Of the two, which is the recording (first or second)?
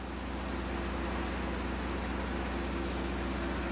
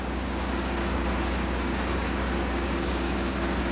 first